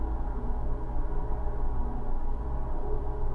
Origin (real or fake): real